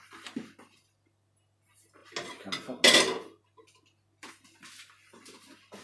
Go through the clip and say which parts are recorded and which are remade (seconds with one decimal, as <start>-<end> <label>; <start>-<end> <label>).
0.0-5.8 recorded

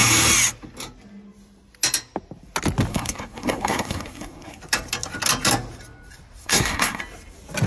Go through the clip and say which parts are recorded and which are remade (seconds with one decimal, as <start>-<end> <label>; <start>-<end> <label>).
0.0-2.9 recorded; 2.9-4.6 remade; 4.6-6.4 recorded; 6.4-7.0 remade; 7.0-7.7 recorded

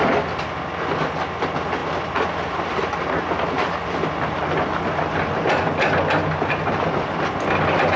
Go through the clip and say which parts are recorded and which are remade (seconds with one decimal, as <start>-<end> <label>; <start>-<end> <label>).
0.0-8.0 recorded